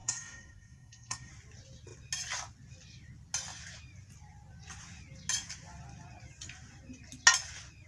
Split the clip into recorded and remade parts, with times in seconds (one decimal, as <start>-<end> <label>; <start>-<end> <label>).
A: 0.0-1.3 remade; 1.3-7.9 recorded